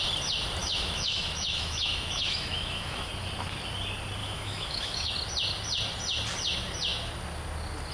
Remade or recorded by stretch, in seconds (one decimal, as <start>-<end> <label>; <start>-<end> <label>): 0.0-0.6 recorded; 0.6-3.1 remade; 3.1-4.2 recorded; 4.2-5.1 remade; 5.1-7.9 recorded

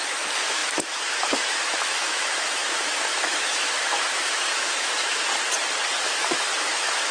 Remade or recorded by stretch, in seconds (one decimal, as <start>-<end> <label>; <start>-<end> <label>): 0.0-5.3 remade; 5.3-6.0 recorded; 6.0-7.1 remade

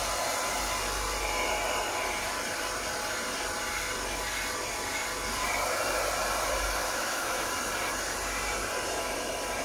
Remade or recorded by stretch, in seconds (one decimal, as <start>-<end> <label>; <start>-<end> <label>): 0.0-6.8 recorded; 6.8-7.5 remade; 7.5-9.6 recorded

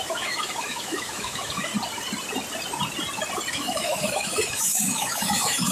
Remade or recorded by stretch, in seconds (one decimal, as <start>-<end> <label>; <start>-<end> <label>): 0.0-1.7 remade; 1.7-3.5 recorded; 3.5-5.7 remade